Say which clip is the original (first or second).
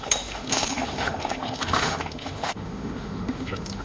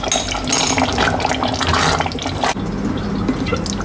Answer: second